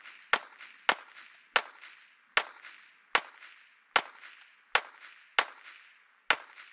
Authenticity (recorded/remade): recorded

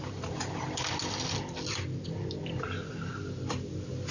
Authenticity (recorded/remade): recorded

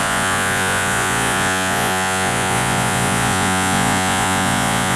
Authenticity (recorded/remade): remade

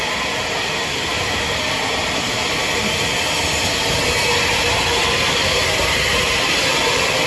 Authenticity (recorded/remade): recorded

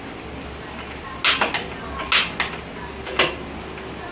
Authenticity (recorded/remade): recorded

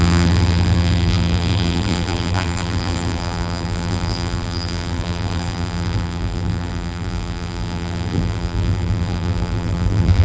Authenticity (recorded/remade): remade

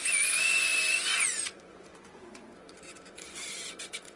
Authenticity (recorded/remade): remade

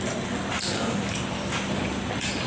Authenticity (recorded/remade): recorded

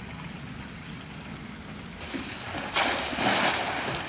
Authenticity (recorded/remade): recorded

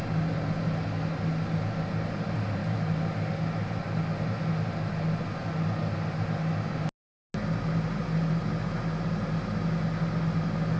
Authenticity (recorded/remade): recorded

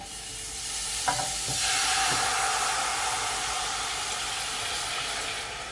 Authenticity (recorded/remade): recorded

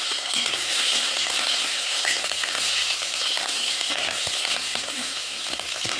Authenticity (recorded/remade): remade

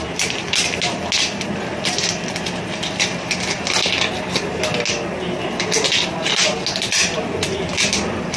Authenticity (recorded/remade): recorded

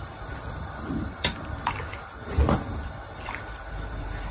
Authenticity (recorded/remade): remade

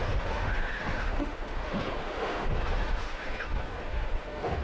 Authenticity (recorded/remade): remade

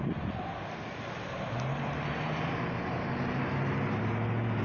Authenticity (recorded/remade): recorded